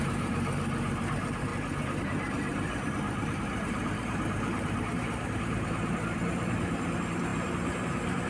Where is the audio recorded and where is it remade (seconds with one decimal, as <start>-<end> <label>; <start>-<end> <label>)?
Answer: 0.0-1.5 remade; 1.5-2.0 recorded; 2.0-8.3 remade